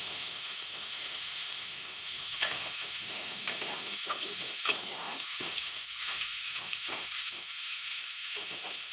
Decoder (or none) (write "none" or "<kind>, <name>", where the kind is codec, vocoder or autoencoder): autoencoder, DAC-VAE